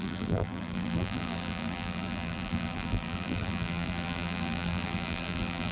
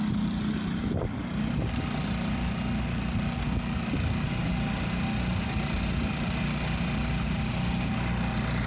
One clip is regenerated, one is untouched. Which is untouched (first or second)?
second